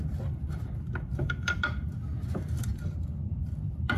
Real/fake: fake